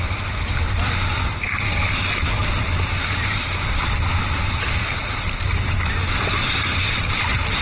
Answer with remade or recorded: recorded